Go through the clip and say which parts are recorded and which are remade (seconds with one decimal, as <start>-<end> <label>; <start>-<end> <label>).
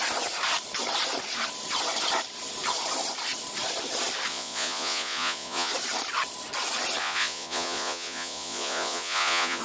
0.0-4.3 recorded; 4.3-5.7 remade; 5.7-7.0 recorded; 7.0-9.6 remade